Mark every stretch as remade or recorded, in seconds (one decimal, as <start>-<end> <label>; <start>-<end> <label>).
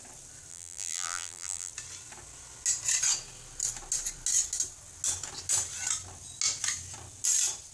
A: 0.0-0.5 recorded; 0.5-1.7 remade; 1.7-7.7 recorded